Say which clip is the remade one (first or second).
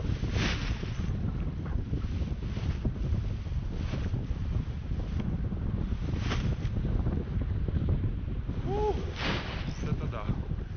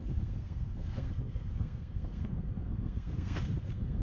second